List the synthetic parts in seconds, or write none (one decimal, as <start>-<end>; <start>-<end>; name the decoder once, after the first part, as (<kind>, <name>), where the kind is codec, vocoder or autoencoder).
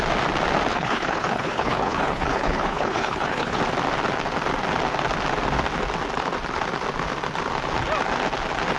0.7-3.6 (codec, HILCodec)